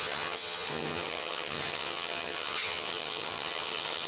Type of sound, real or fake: fake